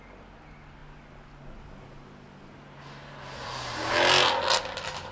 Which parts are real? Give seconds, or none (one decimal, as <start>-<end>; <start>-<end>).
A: 0.0-5.1